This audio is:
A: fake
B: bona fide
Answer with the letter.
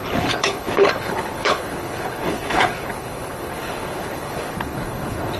A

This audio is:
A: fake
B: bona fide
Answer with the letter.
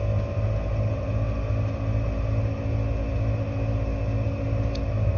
B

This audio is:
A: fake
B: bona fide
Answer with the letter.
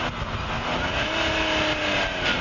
B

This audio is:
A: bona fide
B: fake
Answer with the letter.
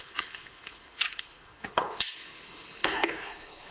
B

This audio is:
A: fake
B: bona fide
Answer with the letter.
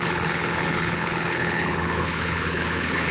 A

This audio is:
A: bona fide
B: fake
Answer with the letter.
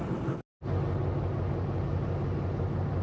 A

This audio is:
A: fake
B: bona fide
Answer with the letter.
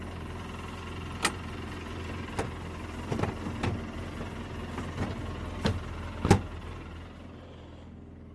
B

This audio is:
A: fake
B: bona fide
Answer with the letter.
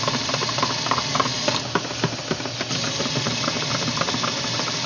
B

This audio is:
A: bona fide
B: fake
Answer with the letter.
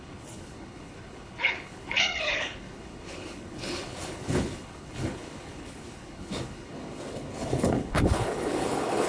B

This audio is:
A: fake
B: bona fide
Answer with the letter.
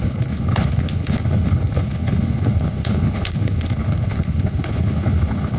A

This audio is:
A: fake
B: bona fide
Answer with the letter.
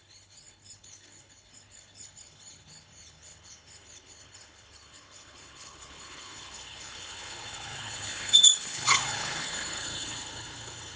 A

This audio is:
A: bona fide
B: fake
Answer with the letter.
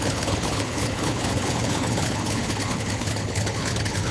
B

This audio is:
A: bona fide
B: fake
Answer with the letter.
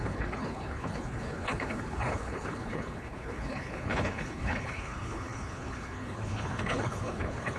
B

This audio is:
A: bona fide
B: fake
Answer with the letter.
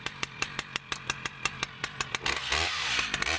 A